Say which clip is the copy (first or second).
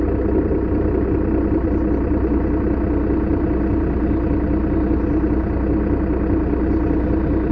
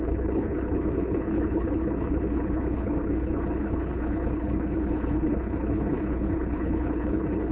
second